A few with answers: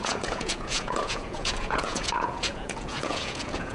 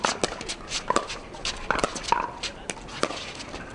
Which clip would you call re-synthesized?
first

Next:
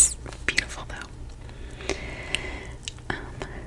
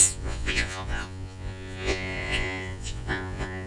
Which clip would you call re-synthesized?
second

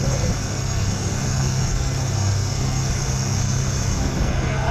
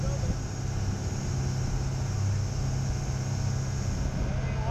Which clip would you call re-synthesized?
first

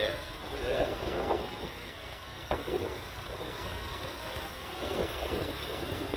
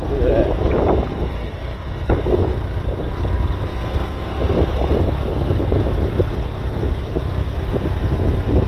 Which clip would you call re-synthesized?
first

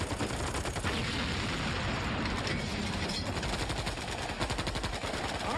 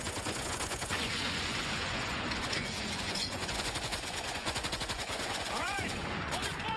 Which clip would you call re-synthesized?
second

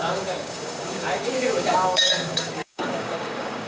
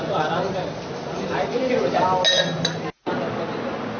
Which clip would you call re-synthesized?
first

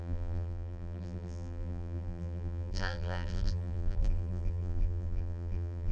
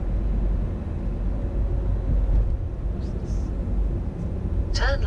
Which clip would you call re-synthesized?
first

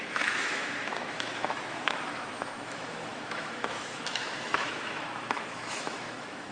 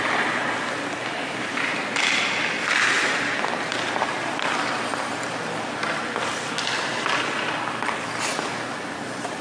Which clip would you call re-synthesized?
first